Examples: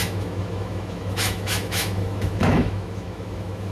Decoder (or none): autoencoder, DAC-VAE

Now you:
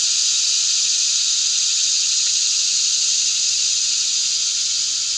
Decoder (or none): vocoder, Vocos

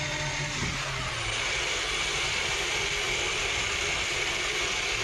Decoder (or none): none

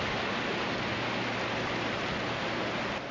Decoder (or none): none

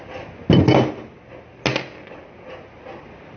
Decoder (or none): none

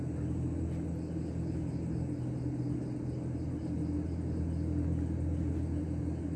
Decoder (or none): none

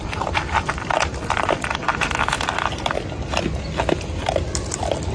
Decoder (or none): none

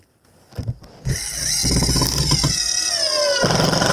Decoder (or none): none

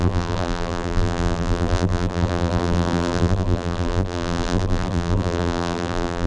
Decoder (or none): vocoder, BigVGAN v2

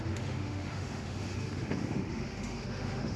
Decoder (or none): autoencoder, DAC-VAE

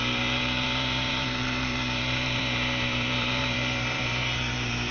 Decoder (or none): vocoder, BigVGAN v2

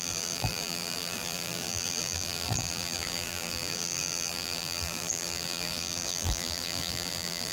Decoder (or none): vocoder, BigVGAN v2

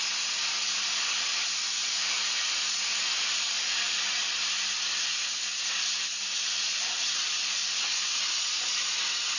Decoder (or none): vocoder, BigVGAN v2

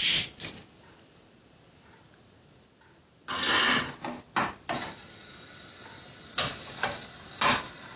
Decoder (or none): none